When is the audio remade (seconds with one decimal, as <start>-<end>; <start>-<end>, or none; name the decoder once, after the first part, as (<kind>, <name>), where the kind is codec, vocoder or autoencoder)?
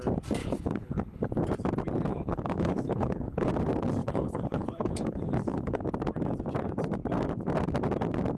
0.4-1.3 (codec, HILCodec); 2.1-3.5; 4.0-5.8